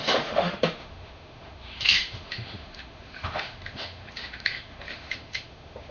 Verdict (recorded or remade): remade